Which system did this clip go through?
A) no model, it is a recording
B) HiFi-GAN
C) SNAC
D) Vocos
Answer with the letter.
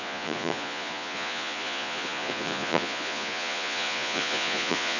D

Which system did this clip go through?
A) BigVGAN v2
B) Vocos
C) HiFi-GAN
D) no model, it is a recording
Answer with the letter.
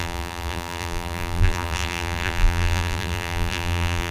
A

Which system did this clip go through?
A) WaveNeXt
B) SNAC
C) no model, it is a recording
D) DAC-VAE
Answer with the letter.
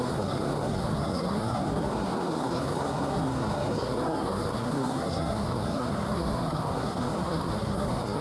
B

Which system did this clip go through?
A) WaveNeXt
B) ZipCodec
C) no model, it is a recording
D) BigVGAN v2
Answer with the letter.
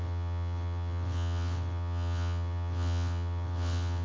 A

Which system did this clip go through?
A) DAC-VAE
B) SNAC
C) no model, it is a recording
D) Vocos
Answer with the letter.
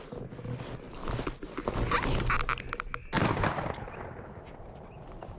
C